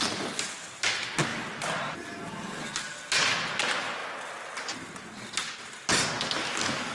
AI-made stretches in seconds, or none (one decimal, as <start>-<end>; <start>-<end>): none